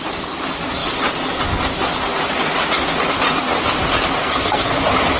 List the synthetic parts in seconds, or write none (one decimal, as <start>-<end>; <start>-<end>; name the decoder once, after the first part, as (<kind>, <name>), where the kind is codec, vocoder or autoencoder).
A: 4.2-4.8 (codec, SNAC)